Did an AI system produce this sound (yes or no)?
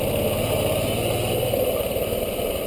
no